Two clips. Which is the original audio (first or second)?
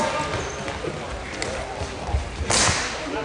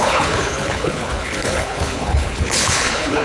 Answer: first